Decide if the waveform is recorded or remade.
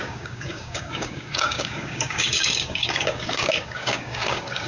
remade